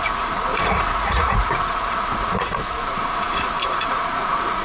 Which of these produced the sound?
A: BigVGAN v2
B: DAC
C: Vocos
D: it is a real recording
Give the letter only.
C